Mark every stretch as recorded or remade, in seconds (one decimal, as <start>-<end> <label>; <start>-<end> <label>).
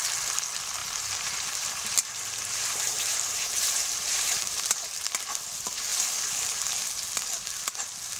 0.0-0.8 recorded; 0.8-4.8 remade; 4.8-8.2 recorded